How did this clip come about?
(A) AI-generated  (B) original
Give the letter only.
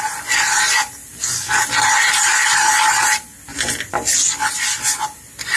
B